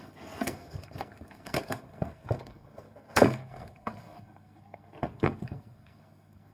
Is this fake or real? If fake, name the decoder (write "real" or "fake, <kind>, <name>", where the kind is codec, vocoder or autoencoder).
fake, codec, SNAC